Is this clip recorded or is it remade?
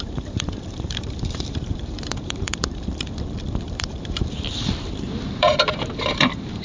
remade